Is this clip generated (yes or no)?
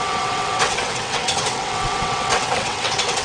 yes